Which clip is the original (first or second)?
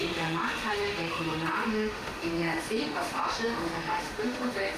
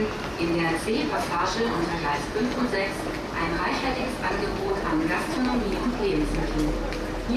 second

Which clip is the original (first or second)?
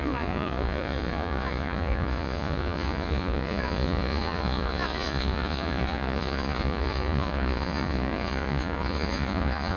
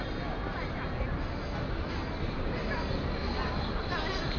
second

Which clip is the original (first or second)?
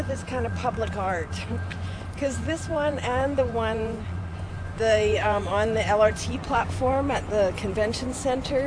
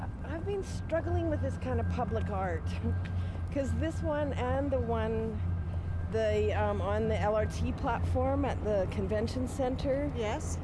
second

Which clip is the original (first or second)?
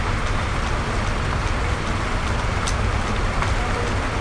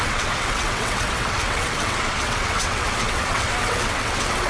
first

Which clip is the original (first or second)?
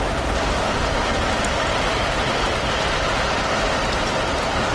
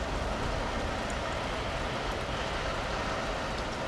second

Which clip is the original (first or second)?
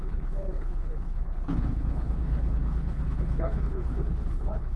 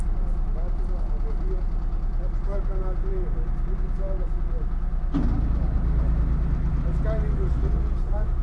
second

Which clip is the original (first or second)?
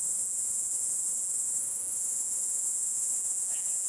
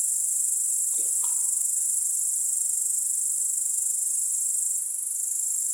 second